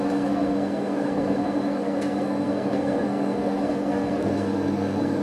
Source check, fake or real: fake